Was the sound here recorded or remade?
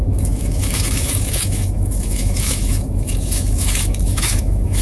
remade